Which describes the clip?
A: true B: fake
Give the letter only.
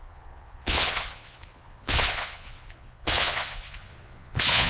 B